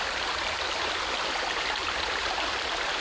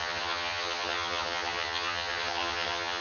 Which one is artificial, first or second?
second